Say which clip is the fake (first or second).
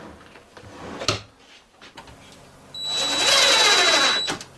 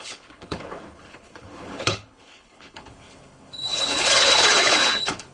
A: second